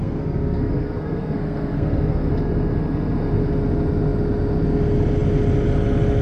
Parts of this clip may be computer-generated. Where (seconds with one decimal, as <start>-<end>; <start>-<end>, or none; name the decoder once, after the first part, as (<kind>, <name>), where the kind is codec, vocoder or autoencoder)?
0.0-2.3 (codec, SNAC)